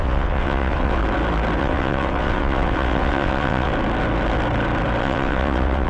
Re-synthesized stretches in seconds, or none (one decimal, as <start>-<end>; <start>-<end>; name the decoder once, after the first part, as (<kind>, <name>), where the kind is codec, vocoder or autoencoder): 0.0-1.0 (vocoder, WaveNeXt); 1.6-3.7; 5.0-5.9